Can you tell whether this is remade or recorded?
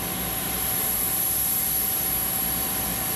recorded